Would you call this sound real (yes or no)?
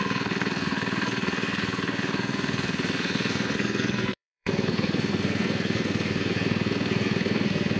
no